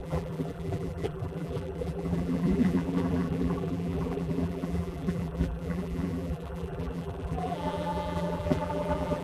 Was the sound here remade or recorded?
remade